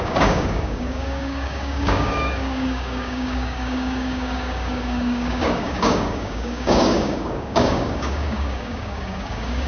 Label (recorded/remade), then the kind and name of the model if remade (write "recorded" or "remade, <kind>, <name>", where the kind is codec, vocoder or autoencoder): remade, codec, DAC